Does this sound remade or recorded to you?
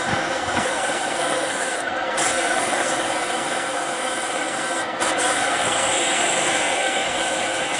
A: remade